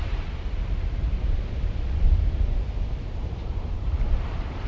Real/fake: fake